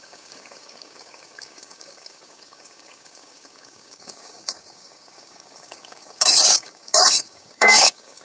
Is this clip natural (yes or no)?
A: no